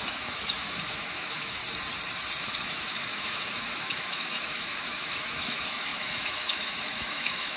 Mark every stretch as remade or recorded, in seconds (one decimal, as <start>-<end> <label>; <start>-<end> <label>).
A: 0.0-1.6 remade; 1.6-2.4 recorded; 2.4-7.6 remade